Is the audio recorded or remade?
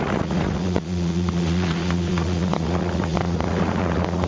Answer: remade